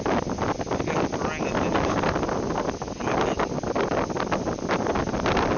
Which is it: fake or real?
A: real